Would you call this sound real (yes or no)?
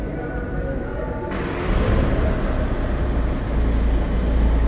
yes